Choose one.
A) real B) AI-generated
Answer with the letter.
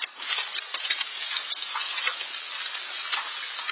A